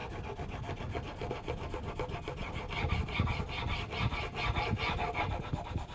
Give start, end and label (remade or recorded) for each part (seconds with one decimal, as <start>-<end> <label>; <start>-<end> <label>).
0.0-5.9 recorded